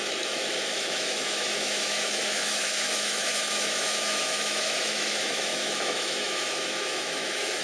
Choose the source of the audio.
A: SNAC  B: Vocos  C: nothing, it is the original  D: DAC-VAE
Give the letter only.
D